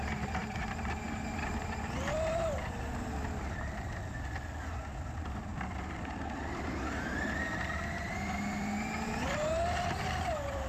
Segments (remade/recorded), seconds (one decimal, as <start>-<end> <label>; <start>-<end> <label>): 0.0-10.7 recorded